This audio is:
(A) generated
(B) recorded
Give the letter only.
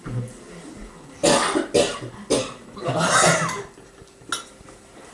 B